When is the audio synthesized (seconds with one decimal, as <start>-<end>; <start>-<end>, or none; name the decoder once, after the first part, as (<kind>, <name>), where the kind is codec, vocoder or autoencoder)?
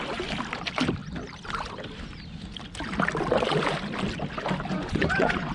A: 4.7-5.5 (vocoder, Vocos)